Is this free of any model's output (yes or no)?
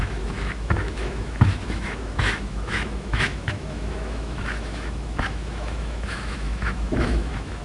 no